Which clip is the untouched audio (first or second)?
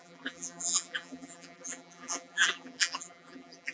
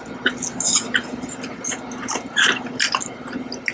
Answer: second